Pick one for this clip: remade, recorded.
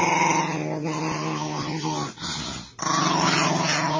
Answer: recorded